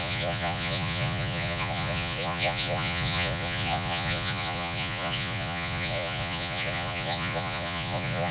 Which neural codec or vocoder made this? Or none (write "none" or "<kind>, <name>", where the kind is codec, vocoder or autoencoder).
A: vocoder, Vocos